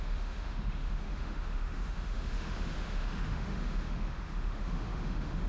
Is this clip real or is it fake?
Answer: fake